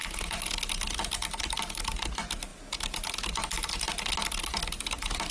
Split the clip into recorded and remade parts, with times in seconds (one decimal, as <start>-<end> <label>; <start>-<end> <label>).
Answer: 0.0-5.3 recorded